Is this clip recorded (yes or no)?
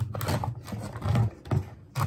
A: yes